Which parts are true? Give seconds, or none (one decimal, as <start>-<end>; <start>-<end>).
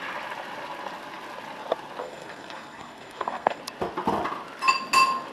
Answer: 0.0-2.0; 3.6-5.3